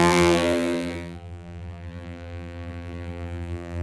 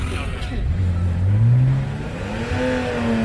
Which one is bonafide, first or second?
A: second